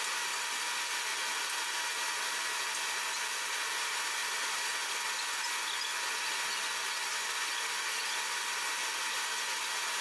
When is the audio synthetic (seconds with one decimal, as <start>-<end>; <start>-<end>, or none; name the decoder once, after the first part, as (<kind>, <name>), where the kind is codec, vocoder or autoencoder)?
none